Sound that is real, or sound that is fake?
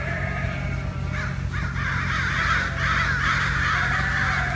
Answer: real